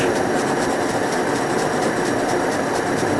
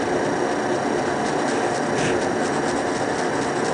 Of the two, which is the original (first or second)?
second